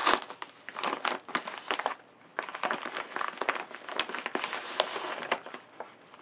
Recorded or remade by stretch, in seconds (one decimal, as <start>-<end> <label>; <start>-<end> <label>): 0.0-6.2 recorded